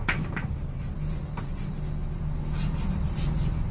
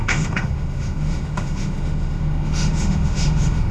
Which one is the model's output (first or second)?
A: second